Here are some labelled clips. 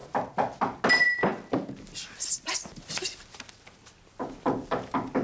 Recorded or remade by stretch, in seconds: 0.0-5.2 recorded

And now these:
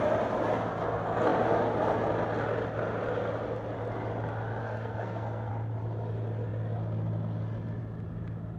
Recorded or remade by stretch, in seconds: 0.0-4.6 recorded; 4.6-5.5 remade; 5.5-8.6 recorded

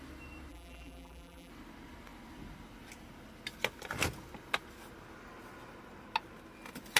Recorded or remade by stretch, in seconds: 0.0-0.5 recorded; 0.5-1.5 remade; 1.5-7.0 recorded

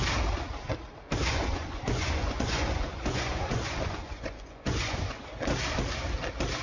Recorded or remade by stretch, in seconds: 0.0-1.2 recorded; 1.2-5.2 remade; 5.2-6.6 recorded

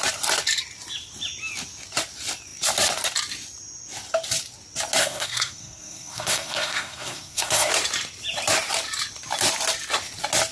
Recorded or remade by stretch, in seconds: 0.0-5.0 recorded; 5.0-7.7 remade; 7.7-10.5 recorded

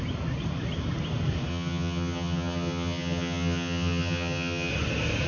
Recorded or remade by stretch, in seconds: 0.0-1.5 recorded; 1.5-4.7 remade; 4.7-5.3 recorded